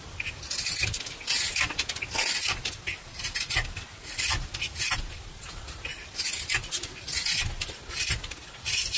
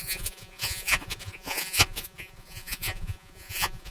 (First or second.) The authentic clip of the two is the first